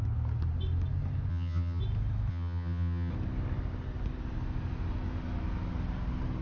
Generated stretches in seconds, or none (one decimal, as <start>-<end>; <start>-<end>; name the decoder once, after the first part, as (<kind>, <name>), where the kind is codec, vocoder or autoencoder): 1.3-1.8 (vocoder, HiFi-GAN); 2.3-3.1